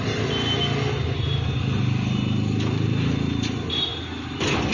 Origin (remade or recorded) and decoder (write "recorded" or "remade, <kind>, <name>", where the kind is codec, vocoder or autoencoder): recorded